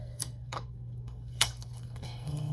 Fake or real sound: fake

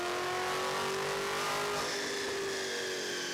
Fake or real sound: real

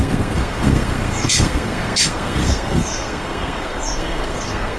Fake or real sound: fake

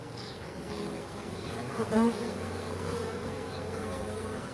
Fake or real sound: fake